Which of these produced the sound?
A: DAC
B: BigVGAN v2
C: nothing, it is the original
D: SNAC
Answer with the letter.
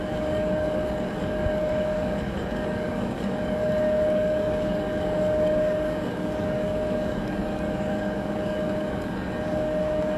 A